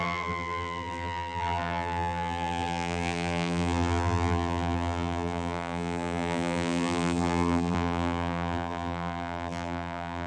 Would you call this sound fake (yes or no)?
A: yes